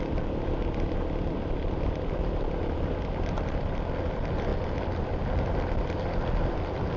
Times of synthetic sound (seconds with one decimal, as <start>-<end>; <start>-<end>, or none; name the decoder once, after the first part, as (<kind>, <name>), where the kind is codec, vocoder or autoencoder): none